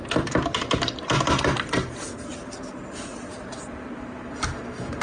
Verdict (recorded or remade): recorded